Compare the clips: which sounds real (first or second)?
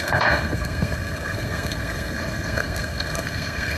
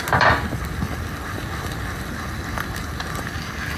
second